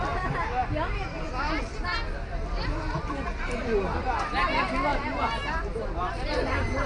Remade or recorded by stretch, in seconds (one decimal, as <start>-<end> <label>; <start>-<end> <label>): 0.0-4.9 recorded; 4.9-6.1 remade; 6.1-6.9 recorded